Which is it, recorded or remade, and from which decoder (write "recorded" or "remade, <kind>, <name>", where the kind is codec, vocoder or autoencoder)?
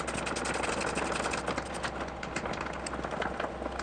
recorded